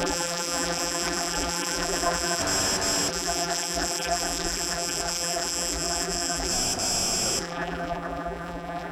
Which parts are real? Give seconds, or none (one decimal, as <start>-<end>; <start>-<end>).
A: 2.4-3.1; 6.5-7.4